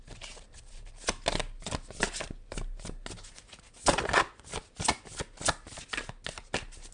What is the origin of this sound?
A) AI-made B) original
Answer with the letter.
B